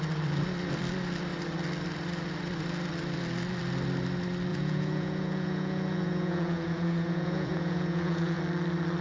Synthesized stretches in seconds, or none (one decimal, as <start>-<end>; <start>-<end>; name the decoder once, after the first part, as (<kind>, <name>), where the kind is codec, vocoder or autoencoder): 4.5-8.4 (vocoder, Vocos)